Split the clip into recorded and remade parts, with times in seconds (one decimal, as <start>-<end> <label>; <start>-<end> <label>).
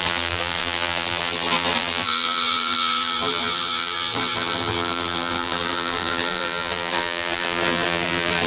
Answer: 0.0-8.5 remade